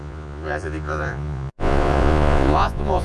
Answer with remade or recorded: remade